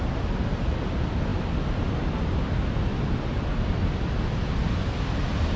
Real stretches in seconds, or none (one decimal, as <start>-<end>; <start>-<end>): 0.0-5.6